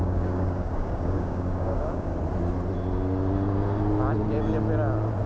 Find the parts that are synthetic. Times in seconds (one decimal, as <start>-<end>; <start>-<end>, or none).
0.0-2.1